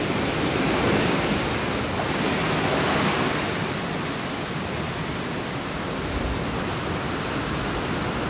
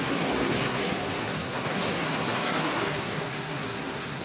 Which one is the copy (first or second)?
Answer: second